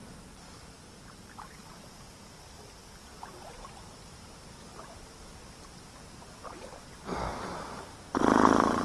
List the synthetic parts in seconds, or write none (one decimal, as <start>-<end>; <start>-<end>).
1.7-2.8; 6.5-7.3; 7.9-8.8